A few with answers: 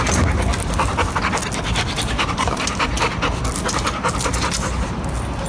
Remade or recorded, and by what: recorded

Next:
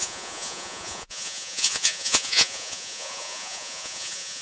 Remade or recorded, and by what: remade, vocoder, Vocos